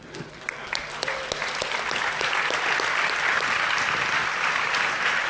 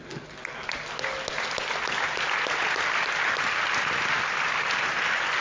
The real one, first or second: second